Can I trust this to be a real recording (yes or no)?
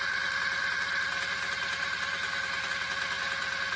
yes